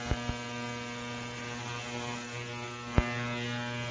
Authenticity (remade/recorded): recorded